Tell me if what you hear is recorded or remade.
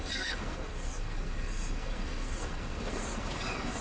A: remade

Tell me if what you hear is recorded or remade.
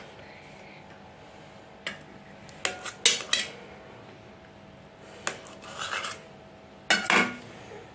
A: recorded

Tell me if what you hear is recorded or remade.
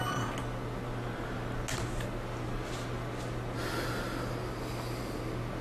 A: recorded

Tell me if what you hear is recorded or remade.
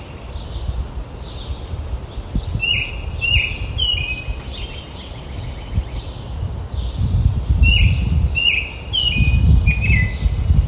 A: recorded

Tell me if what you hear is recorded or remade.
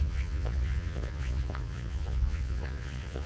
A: remade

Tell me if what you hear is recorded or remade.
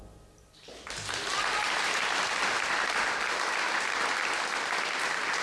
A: recorded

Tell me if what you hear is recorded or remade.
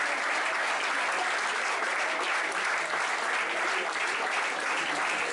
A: recorded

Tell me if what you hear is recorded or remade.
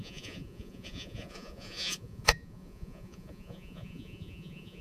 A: remade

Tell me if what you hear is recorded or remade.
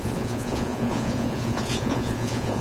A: remade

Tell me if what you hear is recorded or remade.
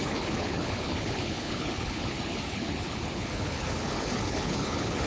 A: remade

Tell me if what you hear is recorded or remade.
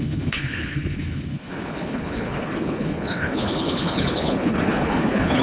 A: remade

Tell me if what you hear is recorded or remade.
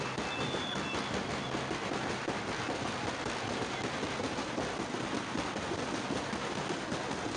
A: recorded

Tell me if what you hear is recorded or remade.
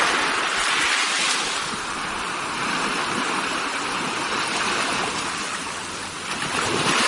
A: recorded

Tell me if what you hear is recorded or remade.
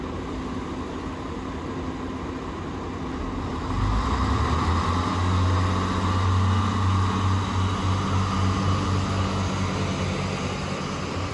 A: recorded